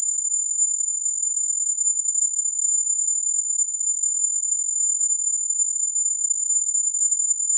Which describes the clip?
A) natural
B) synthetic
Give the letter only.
B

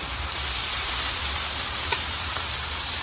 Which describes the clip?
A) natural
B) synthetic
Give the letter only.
B